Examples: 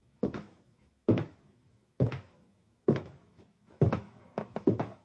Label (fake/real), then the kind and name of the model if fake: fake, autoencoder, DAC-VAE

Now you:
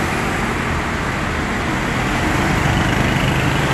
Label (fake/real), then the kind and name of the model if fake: real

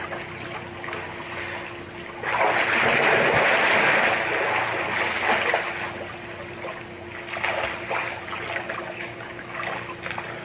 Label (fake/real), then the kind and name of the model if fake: real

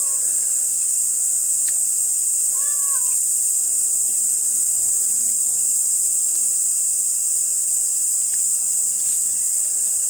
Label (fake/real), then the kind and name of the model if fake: real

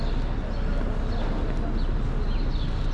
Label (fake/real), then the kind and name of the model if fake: real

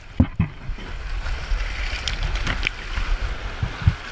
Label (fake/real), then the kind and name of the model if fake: real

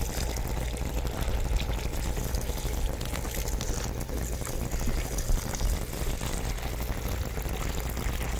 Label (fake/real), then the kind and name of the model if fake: real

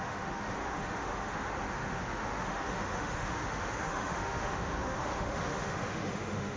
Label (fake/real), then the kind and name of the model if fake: fake, autoencoder, DAC-VAE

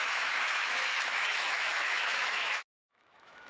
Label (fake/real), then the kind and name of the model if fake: fake, autoencoder, DAC-VAE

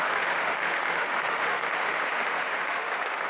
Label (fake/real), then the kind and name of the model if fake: fake, autoencoder, DAC-VAE